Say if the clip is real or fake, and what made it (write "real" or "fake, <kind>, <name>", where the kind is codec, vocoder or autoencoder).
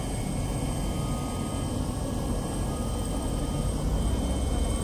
real